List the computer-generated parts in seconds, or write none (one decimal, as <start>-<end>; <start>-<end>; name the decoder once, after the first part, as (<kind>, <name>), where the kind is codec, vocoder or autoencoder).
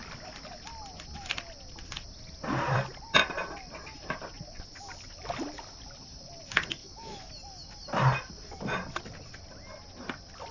6.8-7.3 (autoencoder, DAC-VAE)